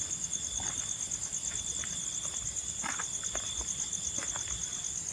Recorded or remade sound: recorded